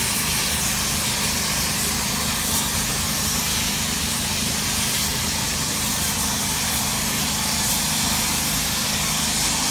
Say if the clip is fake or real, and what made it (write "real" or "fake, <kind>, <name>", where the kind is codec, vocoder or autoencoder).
real